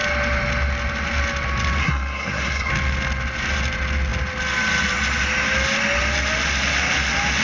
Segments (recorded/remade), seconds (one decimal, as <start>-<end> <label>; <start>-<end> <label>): 0.0-1.8 recorded; 1.8-2.7 remade; 2.7-7.4 recorded